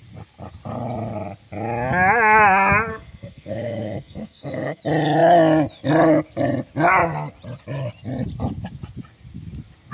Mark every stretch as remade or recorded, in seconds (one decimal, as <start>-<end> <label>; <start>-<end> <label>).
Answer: 0.0-2.9 recorded; 2.9-4.8 remade; 4.8-9.9 recorded